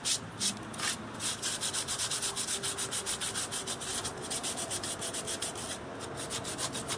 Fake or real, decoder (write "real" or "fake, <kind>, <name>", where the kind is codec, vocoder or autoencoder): real